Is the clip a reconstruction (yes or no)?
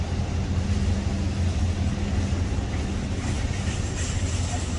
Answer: no